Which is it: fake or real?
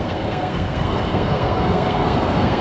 fake